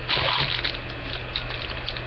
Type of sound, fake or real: real